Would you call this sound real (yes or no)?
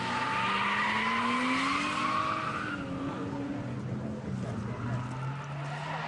yes